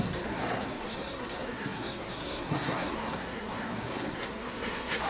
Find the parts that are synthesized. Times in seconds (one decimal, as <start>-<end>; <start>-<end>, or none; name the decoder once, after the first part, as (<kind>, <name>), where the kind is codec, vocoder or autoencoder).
0.0-5.1 (codec, SNAC)